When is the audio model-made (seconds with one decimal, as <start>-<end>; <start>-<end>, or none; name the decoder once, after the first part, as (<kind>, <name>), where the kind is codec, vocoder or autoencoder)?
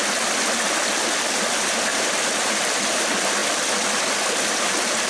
1.9-3.0 (vocoder, BigVGAN v2)